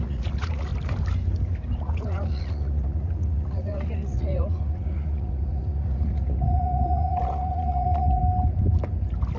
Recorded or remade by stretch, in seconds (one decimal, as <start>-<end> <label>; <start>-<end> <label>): 0.0-0.7 remade; 0.7-1.8 recorded; 1.8-8.2 remade; 8.2-9.4 recorded